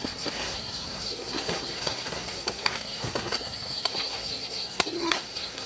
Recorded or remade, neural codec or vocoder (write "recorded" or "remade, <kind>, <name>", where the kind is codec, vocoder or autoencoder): remade, codec, SNAC